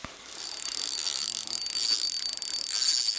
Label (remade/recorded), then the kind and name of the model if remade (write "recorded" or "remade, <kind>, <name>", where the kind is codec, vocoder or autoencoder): recorded